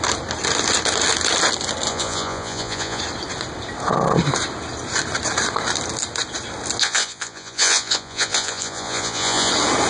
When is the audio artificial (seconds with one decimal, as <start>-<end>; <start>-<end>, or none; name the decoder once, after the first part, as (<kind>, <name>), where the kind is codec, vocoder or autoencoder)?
1.9-3.0 (vocoder, Vocos); 6.8-9.5

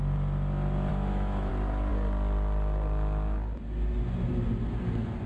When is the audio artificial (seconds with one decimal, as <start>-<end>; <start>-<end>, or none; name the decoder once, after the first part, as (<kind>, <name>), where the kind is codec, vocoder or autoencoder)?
0.9-1.5 (autoencoder, DAC-VAE)